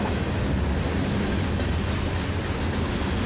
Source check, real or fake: real